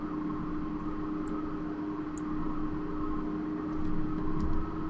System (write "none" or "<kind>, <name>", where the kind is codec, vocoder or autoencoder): none